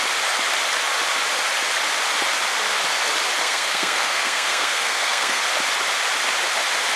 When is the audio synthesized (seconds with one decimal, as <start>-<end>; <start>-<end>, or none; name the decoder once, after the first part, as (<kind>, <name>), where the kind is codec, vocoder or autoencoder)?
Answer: 3.4-5.4 (codec, SNAC)